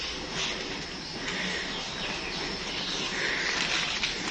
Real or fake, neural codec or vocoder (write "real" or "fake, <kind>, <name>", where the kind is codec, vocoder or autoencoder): real